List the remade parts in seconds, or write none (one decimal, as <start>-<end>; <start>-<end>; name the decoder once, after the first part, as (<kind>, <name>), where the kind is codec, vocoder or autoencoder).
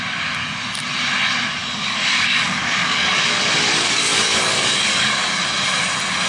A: 1.6-5.4 (codec, DAC)